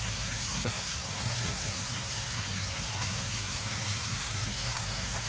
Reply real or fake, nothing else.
fake